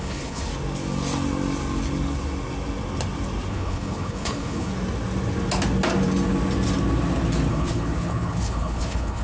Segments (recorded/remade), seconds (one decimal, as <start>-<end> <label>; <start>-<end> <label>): 0.0-0.5 remade; 0.5-3.5 recorded; 3.5-4.7 remade; 4.7-7.5 recorded; 7.5-9.2 remade